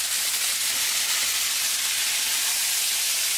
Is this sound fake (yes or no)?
no